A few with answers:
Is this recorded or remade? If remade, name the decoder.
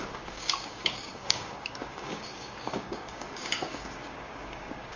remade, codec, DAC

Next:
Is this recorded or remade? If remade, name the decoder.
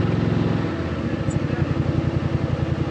recorded